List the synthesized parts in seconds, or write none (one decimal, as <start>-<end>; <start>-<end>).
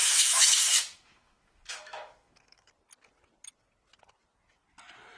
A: 0.0-2.7